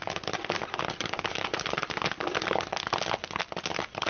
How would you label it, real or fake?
real